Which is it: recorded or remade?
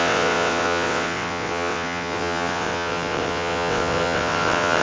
remade